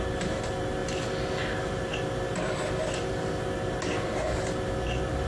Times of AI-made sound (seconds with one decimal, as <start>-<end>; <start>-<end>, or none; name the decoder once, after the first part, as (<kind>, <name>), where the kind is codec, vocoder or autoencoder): none